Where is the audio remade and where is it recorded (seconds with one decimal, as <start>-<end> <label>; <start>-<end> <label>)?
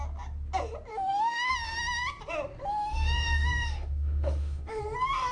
0.0-0.9 recorded; 0.9-1.5 remade; 1.5-2.7 recorded; 2.7-4.8 remade; 4.8-5.3 recorded